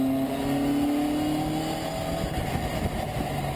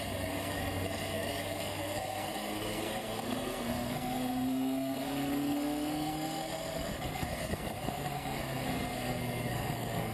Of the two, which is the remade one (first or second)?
second